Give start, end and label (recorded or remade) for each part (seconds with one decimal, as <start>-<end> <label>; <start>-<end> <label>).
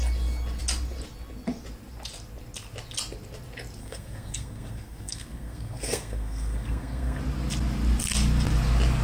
0.0-3.8 recorded; 3.8-7.2 remade; 7.2-9.0 recorded